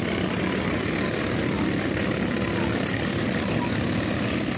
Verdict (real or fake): real